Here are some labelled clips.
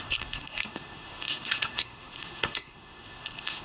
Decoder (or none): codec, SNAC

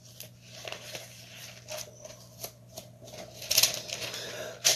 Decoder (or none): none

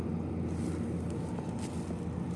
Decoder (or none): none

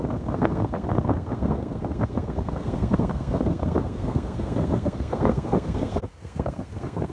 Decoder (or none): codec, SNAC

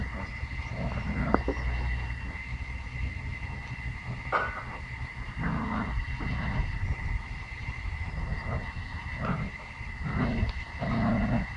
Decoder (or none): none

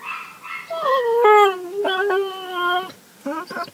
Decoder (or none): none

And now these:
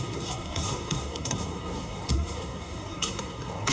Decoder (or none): codec, SNAC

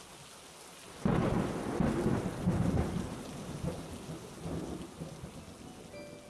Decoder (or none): none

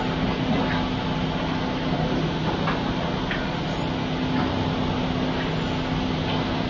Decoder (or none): none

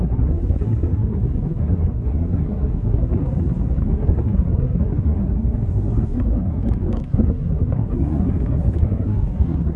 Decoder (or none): codec, SNAC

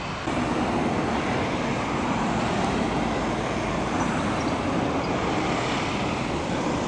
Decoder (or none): none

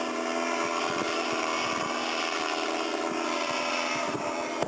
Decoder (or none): none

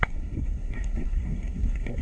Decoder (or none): codec, SNAC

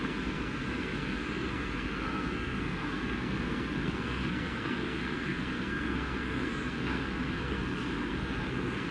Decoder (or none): codec, SNAC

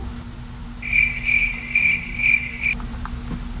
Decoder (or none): none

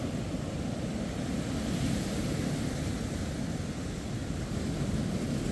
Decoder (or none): none